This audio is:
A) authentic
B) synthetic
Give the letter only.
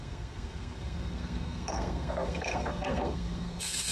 B